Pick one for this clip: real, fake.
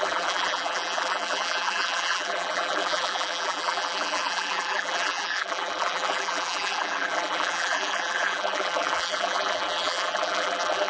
fake